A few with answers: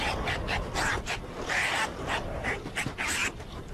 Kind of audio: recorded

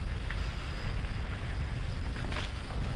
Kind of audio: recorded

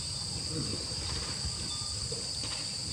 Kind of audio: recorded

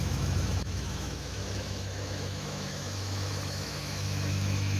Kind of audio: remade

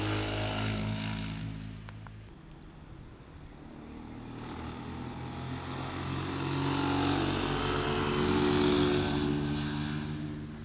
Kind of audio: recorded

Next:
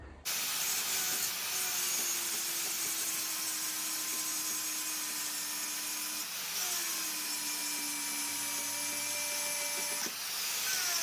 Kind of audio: recorded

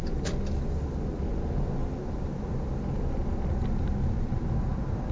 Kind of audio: recorded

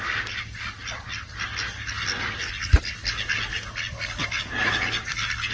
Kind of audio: recorded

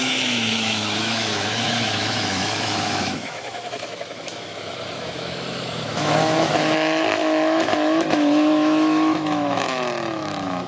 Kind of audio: remade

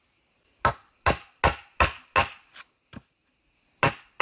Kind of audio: recorded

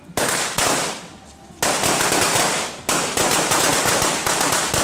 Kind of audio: recorded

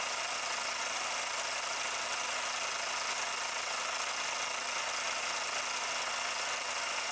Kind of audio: recorded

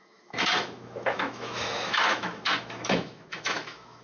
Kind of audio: remade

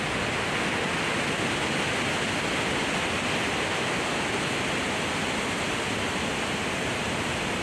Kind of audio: recorded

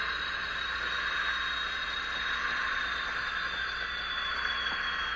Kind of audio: recorded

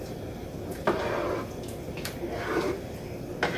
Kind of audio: recorded